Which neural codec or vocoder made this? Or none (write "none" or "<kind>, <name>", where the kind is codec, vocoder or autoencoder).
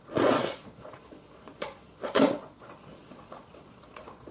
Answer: vocoder, Vocos